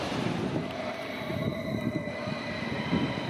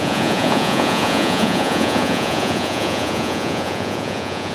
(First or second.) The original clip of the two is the first